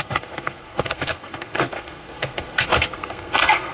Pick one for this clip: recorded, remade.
remade